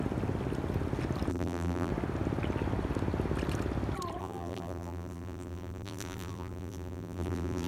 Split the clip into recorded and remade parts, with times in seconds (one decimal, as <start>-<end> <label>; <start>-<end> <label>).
0.0-1.3 recorded; 1.3-1.9 remade; 1.9-4.2 recorded; 4.2-7.7 remade